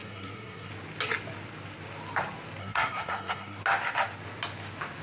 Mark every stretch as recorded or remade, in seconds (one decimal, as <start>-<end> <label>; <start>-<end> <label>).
0.0-0.7 remade; 0.7-2.6 recorded; 2.6-3.6 remade; 3.6-5.0 recorded